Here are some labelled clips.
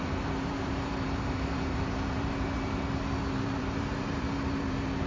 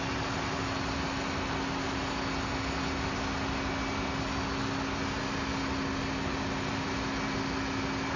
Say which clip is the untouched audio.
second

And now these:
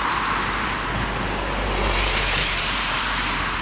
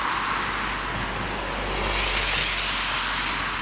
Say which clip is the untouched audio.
second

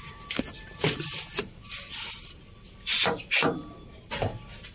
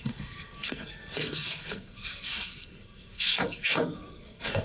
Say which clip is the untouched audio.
first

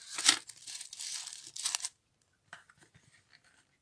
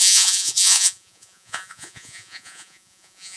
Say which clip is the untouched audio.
first